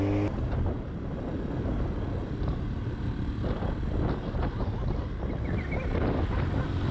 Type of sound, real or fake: real